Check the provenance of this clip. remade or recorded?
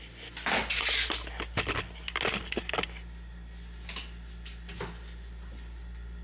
recorded